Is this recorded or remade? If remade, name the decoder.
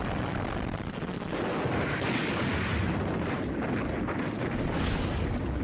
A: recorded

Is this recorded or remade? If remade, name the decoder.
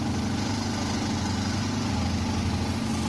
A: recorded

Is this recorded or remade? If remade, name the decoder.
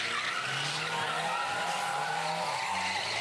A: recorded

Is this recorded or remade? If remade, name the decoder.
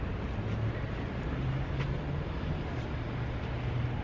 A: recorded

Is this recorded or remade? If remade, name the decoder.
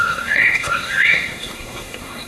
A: remade, codec, SNAC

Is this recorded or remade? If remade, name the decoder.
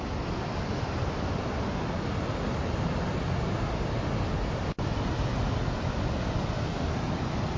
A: recorded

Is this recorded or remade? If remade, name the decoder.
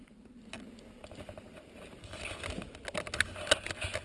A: recorded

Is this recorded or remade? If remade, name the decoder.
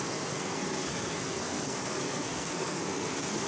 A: remade, codec, SNAC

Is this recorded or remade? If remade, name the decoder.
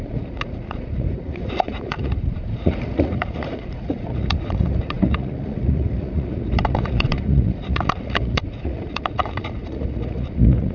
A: remade, vocoder, Vocos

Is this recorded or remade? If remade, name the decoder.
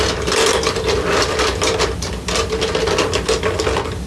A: recorded